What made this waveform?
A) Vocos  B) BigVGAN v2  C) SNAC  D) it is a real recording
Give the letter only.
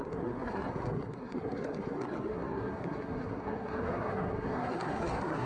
C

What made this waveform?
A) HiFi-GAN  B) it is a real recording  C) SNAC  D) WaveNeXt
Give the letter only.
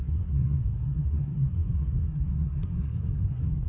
C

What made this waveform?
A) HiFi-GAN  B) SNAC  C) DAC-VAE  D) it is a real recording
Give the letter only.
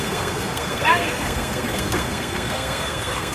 B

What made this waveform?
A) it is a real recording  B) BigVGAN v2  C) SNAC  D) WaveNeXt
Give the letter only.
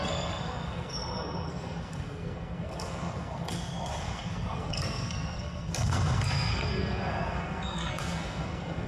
C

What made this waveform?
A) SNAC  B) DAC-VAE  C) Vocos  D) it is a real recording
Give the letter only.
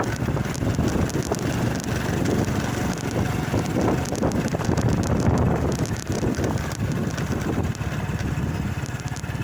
D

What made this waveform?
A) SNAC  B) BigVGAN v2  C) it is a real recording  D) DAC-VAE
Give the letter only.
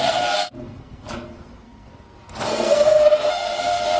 A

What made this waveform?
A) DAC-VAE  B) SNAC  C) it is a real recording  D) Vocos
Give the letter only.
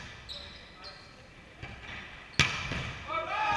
C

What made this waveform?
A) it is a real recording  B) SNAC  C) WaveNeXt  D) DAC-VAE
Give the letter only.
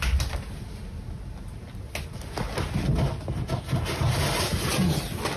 A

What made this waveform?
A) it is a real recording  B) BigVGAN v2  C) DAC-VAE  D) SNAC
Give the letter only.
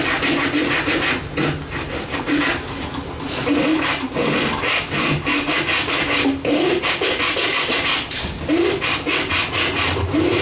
A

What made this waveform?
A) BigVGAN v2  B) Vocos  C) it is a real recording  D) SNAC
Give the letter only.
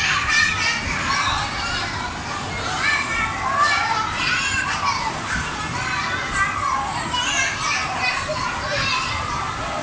C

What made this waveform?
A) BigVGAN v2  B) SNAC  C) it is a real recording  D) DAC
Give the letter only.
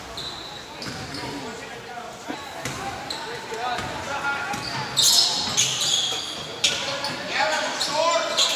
C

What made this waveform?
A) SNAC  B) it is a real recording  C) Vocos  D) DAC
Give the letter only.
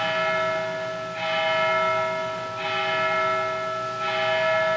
B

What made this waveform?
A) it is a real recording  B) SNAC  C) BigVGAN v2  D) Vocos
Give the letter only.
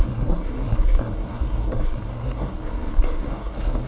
B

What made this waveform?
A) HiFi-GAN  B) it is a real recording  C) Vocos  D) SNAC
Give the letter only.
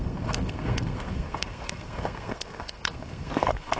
D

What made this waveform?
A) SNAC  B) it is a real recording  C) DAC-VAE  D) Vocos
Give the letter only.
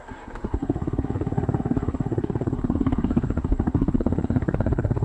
A